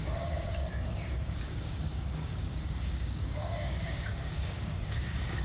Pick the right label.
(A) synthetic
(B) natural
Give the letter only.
A